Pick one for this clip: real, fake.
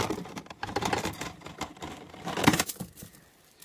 fake